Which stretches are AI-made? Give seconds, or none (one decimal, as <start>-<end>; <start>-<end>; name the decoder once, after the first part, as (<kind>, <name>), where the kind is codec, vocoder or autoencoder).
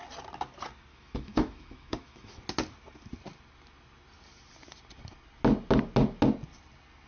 0.9-2.4 (autoencoder, DAC-VAE)